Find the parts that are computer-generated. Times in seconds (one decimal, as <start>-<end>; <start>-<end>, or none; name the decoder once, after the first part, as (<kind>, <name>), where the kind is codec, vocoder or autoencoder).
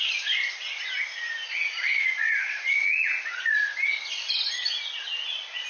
2.2-3.7 (vocoder, Vocos)